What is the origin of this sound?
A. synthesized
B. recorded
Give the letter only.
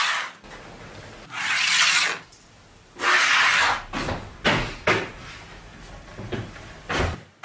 B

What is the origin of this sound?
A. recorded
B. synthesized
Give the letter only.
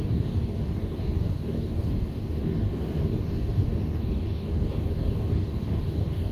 B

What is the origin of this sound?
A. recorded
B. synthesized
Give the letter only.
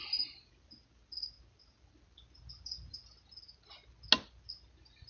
A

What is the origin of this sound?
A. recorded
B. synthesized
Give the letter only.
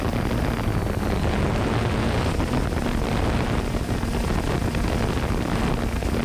A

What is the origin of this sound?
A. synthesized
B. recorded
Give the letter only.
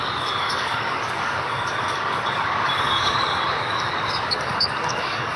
A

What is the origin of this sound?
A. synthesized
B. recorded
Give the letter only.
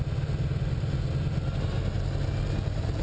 B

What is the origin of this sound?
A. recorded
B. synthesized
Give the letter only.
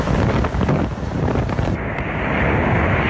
A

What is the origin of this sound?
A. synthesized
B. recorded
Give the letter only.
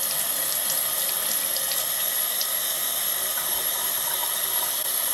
B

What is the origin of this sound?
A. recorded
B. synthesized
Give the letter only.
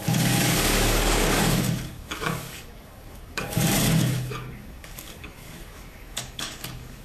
B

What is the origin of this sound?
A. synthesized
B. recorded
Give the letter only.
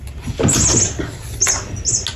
B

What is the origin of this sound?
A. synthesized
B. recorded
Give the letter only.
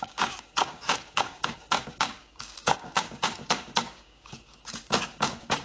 A